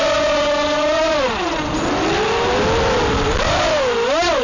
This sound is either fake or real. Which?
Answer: real